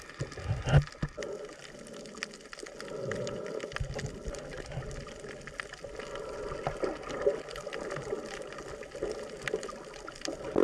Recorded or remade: recorded